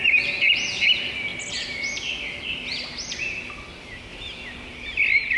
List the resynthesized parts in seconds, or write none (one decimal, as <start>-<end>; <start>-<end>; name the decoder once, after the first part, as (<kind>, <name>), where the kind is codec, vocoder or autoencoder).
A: none